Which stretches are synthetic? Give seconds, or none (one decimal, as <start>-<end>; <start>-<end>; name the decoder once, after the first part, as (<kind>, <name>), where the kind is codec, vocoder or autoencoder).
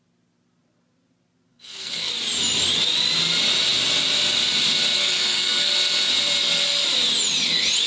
1.5-2.1 (codec, SNAC); 5.0-5.7